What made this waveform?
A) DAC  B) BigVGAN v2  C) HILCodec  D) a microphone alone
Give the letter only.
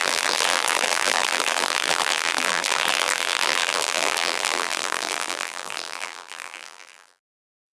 B